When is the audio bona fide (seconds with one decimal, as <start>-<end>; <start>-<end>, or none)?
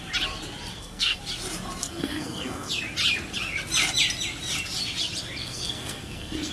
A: 0.0-0.7; 1.2-1.8; 2.7-5.4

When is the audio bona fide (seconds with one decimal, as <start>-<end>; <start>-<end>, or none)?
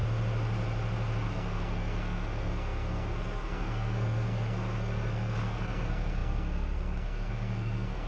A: 0.0-1.3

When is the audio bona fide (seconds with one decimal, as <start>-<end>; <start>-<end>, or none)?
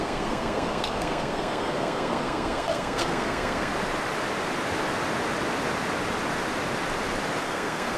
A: 3.7-7.4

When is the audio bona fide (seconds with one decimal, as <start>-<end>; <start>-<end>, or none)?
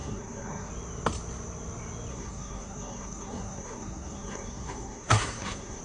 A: 0.7-2.1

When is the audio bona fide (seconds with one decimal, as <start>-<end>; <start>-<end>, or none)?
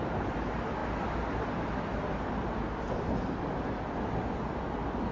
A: 0.0-5.1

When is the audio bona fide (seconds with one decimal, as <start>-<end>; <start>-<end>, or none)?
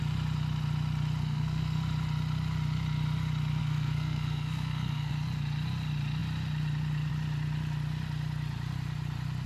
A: 0.0-1.2; 1.8-3.6; 5.1-9.5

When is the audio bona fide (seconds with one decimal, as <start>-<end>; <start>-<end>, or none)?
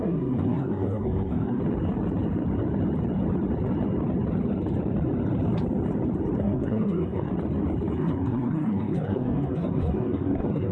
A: 1.6-6.4; 7.3-7.9